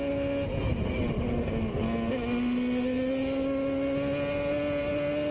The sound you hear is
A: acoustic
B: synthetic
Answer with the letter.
A